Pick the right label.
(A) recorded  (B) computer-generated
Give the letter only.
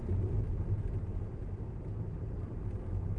A